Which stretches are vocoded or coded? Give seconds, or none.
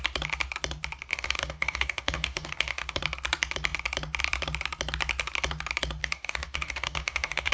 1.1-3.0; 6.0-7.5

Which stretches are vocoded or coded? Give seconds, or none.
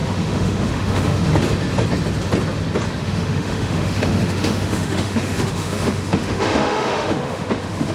0.0-1.3; 3.0-7.9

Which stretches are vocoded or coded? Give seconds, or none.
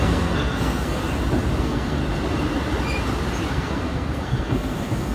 0.0-1.0; 1.6-2.0; 3.5-5.1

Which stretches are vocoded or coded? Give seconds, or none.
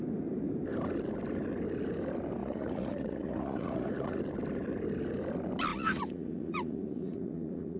2.4-4.2; 5.7-7.8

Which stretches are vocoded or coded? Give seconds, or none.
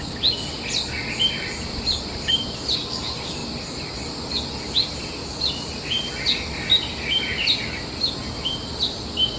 none